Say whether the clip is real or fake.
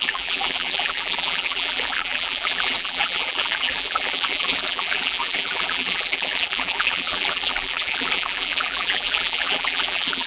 fake